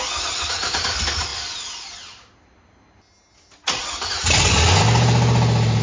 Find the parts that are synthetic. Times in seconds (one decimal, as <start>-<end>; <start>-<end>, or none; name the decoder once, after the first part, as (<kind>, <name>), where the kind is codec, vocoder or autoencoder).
none